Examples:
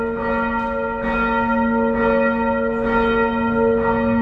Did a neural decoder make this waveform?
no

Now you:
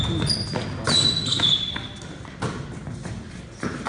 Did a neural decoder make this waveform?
no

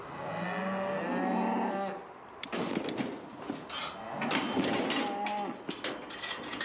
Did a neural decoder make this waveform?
no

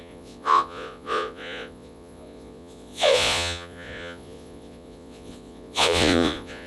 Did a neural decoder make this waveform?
yes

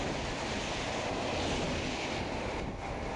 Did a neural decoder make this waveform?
no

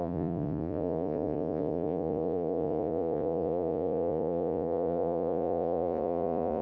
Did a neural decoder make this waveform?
yes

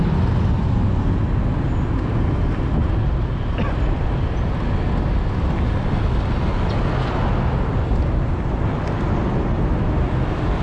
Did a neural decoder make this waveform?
no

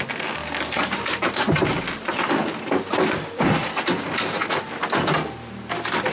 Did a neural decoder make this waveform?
no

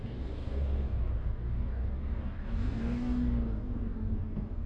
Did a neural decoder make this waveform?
yes